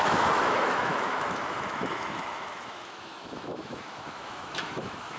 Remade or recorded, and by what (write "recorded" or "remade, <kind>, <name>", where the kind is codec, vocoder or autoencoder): remade, autoencoder, DAC-VAE